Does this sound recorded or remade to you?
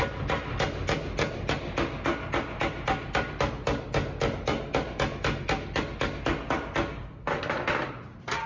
recorded